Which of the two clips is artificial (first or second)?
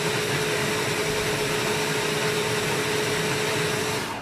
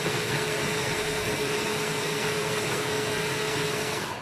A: second